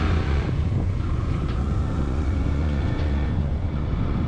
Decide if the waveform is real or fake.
fake